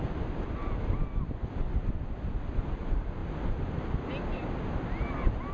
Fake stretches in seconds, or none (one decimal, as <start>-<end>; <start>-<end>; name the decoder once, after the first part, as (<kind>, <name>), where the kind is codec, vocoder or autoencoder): none

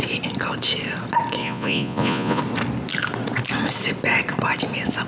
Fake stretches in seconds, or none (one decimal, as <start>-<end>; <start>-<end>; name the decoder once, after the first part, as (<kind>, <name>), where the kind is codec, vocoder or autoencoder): 1.4-2.4 (vocoder, Vocos)